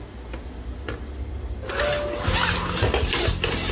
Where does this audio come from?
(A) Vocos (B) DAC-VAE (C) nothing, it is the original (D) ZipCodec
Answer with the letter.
C